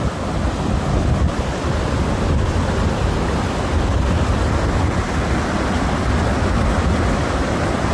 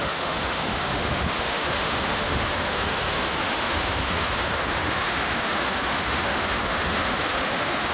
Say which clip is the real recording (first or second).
first